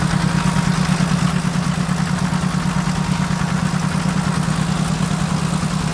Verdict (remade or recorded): recorded